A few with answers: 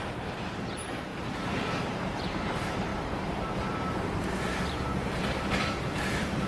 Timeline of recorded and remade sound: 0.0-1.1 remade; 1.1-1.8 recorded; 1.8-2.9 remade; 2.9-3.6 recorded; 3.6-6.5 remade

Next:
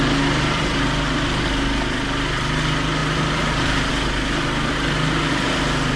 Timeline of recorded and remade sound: 0.0-6.0 recorded

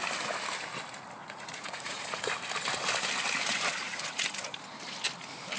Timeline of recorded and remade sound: 0.0-1.2 recorded; 1.2-2.2 remade; 2.2-3.5 recorded; 3.5-4.3 remade; 4.3-5.6 recorded

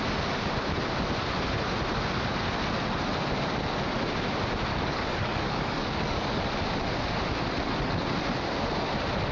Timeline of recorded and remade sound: 0.0-4.7 recorded; 4.7-6.4 remade; 6.4-9.3 recorded